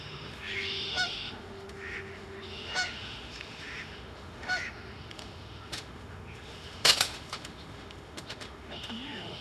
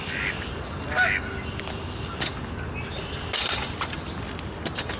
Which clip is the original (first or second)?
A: second